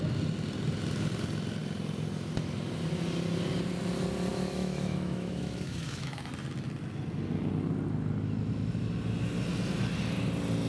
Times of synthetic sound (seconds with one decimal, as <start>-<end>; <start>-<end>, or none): 4.3-6.3